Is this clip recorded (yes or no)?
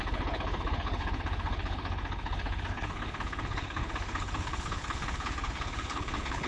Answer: no